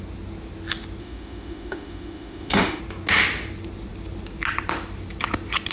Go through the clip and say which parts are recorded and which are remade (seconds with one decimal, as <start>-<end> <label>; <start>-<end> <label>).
0.0-1.0 recorded; 1.0-2.8 remade; 2.8-5.7 recorded